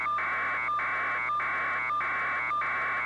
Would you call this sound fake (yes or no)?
no